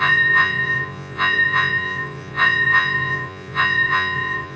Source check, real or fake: fake